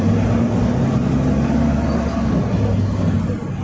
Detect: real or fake real